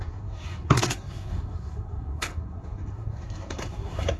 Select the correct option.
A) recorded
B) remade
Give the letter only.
B